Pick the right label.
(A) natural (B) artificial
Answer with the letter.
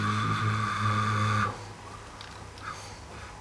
A